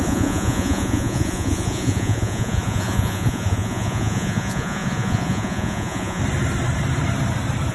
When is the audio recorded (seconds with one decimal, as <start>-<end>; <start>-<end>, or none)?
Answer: 6.2-7.7